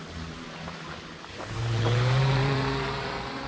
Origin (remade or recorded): remade